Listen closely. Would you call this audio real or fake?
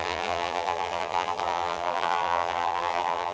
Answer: fake